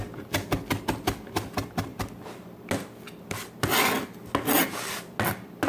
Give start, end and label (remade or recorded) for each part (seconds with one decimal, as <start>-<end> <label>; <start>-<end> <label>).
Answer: 0.0-5.7 recorded